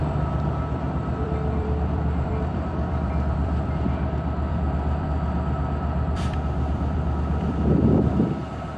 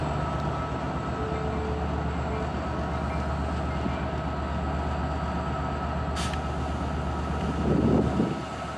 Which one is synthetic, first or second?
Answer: first